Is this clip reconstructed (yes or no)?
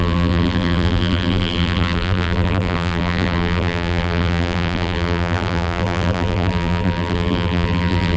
yes